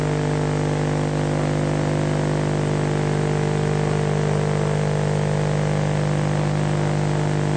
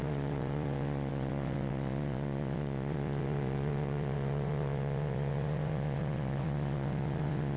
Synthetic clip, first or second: second